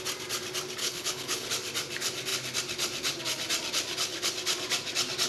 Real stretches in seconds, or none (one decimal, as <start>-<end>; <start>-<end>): 0.0-0.8; 1.5-5.3